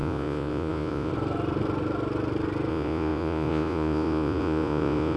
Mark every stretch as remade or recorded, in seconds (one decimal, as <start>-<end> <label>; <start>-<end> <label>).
0.0-1.1 remade; 1.1-2.7 recorded; 2.7-5.2 remade